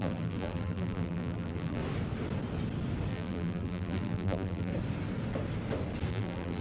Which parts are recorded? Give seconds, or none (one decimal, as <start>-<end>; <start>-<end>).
1.8-3.1; 4.7-6.1